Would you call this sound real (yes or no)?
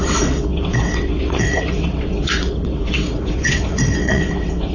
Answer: no